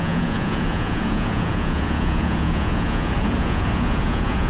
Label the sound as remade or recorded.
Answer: remade